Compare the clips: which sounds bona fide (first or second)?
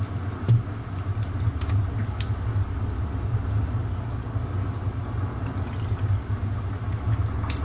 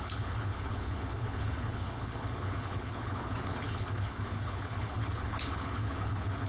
first